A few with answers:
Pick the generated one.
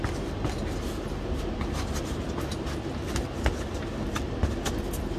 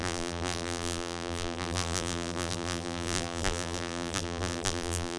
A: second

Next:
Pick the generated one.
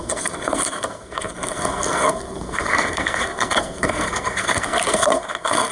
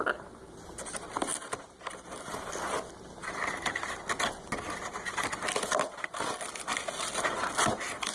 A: first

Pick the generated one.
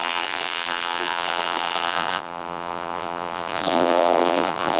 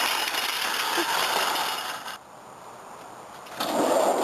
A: first